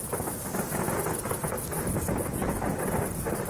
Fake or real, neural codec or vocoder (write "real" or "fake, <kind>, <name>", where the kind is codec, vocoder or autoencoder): real